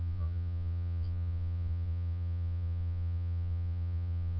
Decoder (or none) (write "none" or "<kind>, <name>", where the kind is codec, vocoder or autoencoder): vocoder, Vocos